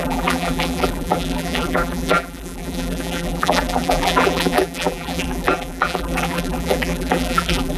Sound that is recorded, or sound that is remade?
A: remade